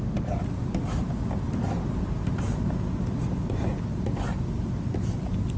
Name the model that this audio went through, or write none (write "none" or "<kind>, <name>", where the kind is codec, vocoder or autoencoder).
none